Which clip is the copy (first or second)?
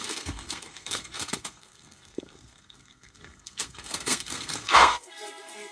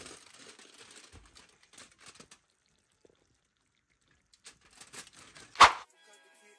first